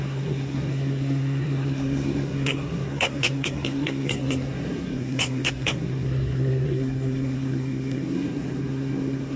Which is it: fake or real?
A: fake